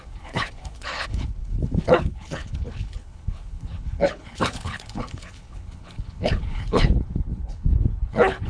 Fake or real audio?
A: fake